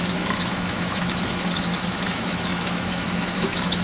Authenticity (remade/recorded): remade